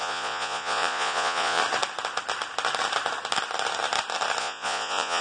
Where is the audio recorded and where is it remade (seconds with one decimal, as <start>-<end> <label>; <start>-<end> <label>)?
0.0-1.6 remade; 1.6-4.4 recorded; 4.4-5.2 remade